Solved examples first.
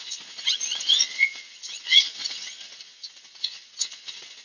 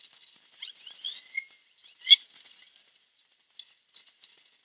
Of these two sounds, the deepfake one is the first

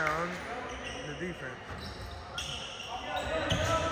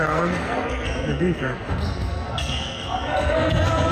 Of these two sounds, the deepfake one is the second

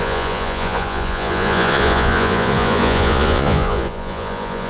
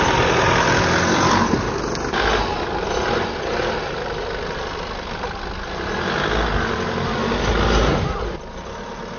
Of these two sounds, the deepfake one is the first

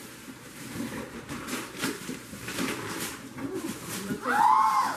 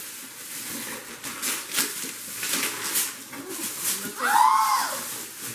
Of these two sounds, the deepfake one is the first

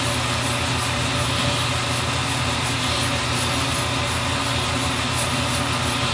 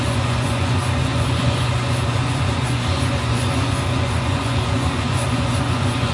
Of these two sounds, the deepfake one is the second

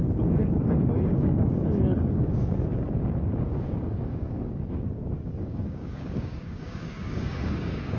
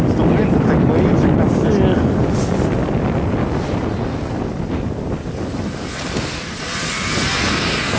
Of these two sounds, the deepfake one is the first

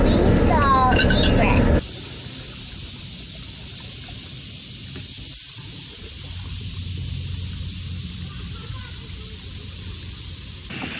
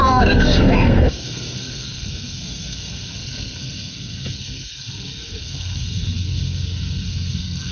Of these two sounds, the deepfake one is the second